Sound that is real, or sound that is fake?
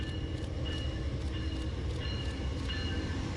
real